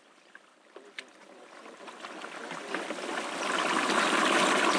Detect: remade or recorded recorded